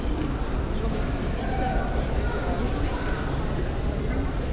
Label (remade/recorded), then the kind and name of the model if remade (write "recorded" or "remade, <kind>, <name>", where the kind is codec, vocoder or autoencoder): recorded